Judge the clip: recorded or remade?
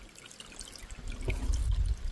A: recorded